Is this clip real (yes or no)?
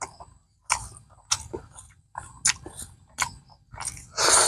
yes